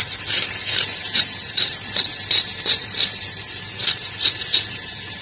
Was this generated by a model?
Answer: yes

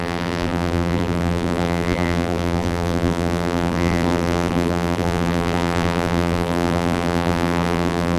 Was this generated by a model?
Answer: yes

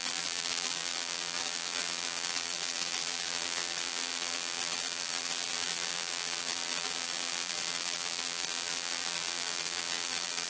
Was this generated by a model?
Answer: yes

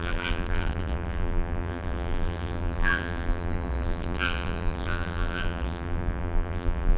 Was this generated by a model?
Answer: yes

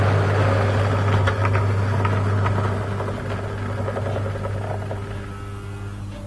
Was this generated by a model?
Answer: no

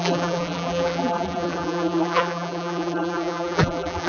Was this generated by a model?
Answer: yes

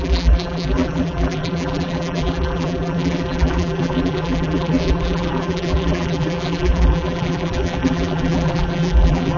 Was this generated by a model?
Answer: yes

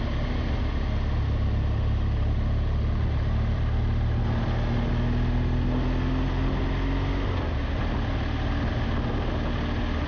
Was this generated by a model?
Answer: no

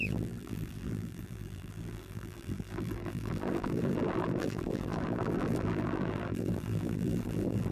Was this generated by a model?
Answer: yes